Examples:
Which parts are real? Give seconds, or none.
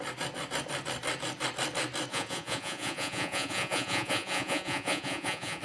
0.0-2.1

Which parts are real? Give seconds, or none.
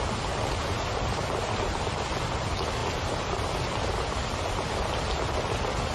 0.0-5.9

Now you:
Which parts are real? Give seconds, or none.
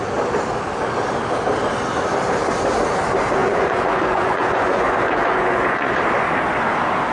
0.0-3.4; 6.0-7.1